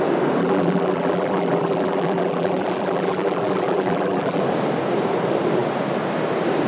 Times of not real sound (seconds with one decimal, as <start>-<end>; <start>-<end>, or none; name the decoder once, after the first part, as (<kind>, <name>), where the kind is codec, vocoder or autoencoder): 0.4-4.4 (vocoder, BigVGAN v2)